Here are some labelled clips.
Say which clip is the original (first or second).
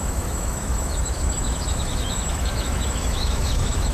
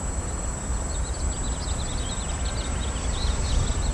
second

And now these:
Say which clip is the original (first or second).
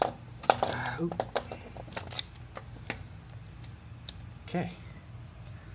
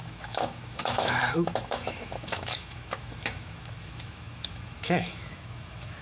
first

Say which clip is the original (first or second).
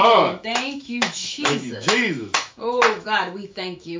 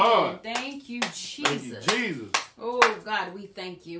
second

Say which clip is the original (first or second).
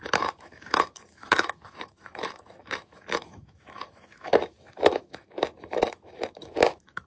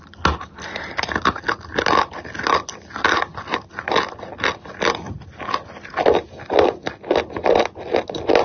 second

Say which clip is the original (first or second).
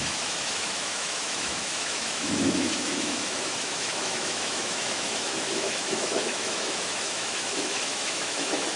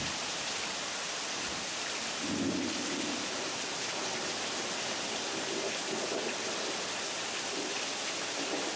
second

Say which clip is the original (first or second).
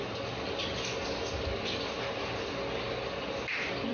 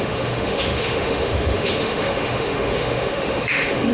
first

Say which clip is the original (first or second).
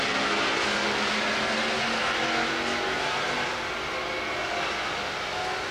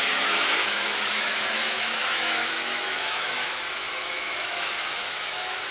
first